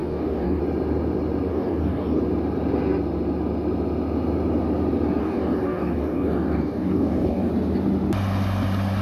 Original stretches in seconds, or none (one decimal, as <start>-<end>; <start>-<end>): 0.6-1.5; 2.2-5.2; 7.5-9.0